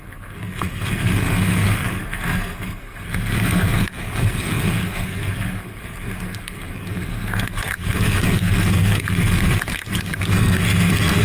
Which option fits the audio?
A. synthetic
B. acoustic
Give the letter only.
A